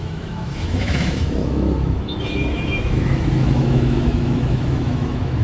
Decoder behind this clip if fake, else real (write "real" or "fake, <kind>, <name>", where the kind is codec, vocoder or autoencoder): fake, autoencoder, DAC-VAE